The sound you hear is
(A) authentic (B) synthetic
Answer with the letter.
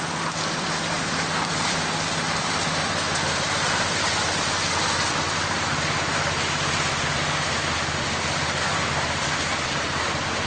B